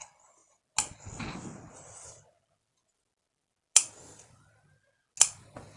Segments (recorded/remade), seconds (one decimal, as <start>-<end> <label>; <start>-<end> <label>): 0.0-5.8 recorded